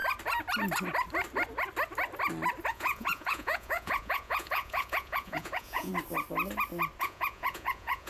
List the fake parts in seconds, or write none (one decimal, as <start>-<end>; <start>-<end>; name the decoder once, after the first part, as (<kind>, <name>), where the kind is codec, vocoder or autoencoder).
2.7-5.9 (vocoder, Vocos); 7.0-8.1